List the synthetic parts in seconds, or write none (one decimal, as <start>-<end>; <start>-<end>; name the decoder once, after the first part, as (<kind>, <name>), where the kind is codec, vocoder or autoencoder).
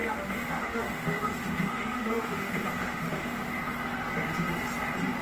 0.0-3.4 (autoencoder, DAC-VAE)